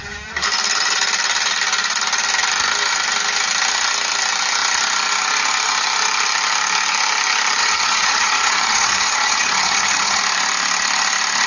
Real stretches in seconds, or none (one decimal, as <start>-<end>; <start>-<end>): 0.0-7.6; 10.2-11.5